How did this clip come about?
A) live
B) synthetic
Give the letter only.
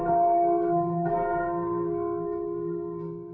B